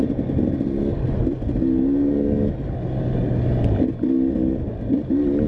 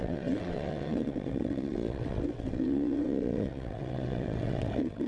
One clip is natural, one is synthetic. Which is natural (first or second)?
first